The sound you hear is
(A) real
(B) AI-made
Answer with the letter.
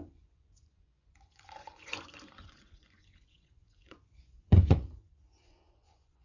B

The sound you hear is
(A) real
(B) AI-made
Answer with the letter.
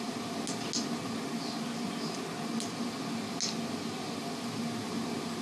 A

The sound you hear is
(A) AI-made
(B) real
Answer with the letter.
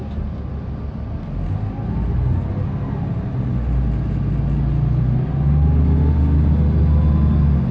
B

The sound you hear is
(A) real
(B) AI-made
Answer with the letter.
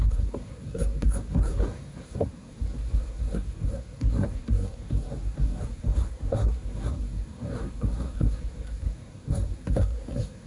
B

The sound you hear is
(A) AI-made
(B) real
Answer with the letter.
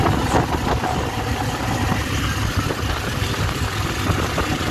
A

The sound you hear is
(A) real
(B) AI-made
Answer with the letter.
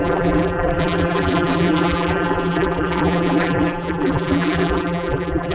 B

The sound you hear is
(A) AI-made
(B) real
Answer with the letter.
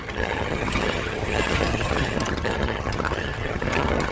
A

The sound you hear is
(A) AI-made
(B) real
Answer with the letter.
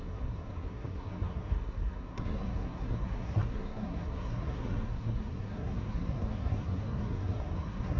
A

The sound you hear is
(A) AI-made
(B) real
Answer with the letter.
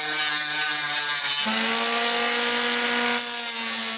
B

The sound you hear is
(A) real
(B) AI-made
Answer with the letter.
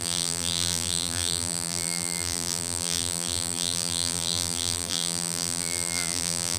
B